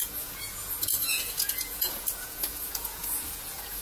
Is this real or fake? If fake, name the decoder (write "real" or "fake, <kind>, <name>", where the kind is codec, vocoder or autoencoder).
fake, vocoder, Vocos